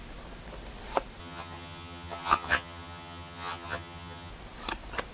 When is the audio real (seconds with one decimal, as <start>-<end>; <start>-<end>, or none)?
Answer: 0.0-1.2; 4.3-5.1